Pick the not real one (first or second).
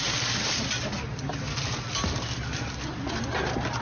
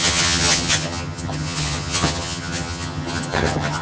second